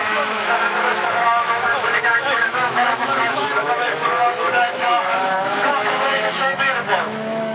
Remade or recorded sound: remade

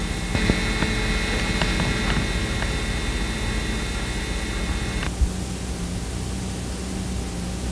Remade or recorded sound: recorded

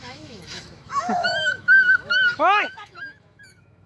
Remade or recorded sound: remade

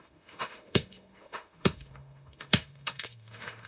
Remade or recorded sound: remade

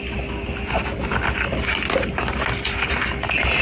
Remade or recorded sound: recorded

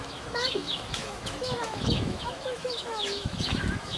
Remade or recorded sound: remade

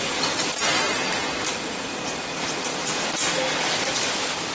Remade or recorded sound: recorded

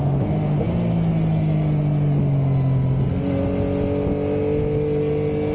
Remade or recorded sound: recorded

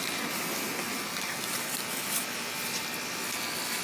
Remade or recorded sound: recorded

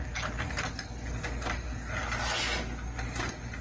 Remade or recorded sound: recorded